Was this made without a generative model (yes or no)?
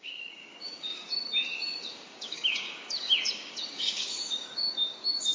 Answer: no